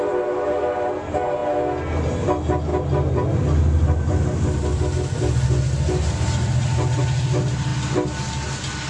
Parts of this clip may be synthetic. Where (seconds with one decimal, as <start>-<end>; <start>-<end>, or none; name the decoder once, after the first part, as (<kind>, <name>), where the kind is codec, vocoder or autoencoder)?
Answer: none